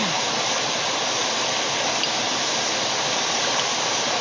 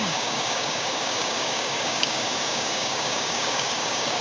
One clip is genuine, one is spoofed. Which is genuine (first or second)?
first